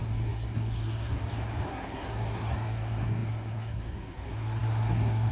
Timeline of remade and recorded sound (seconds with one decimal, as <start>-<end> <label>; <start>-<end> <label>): 0.0-1.2 remade; 1.2-1.7 recorded; 1.7-5.3 remade